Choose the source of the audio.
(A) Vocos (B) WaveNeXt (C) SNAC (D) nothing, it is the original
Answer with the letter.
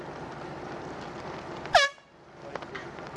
D